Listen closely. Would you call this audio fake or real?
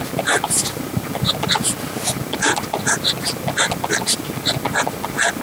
real